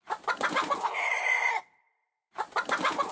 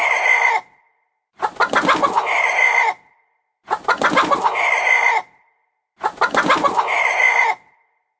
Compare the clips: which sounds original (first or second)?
second